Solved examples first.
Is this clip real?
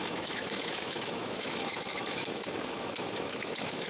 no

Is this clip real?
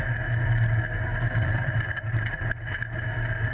yes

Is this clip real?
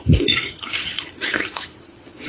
no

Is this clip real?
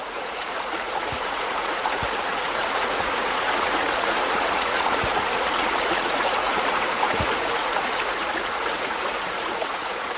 no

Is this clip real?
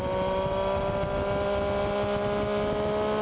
yes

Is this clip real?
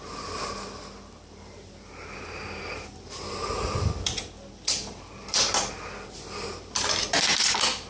no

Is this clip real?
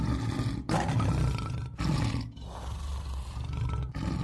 yes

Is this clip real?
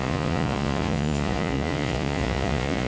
no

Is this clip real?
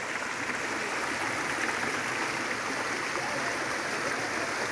yes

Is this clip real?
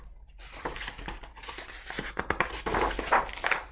yes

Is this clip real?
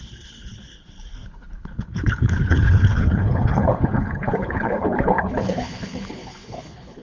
no